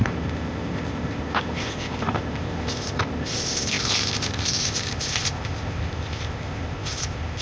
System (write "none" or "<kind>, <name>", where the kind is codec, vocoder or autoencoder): codec, ZipCodec